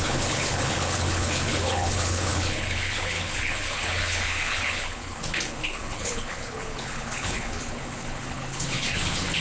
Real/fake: fake